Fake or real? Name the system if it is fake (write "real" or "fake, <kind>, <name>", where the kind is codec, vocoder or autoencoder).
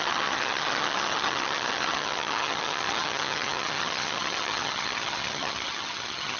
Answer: fake, vocoder, HiFi-GAN